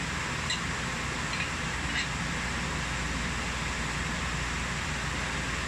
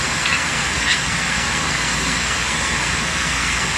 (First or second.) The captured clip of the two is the first